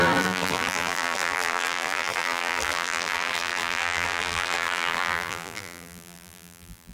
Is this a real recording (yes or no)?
no